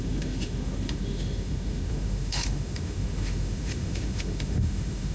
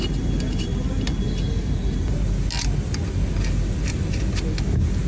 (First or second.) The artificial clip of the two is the first